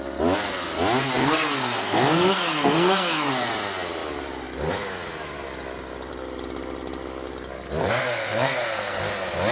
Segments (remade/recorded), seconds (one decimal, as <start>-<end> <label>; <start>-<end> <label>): 0.0-1.2 recorded; 1.2-3.3 remade; 3.3-7.8 recorded; 7.8-9.0 remade; 9.0-9.5 recorded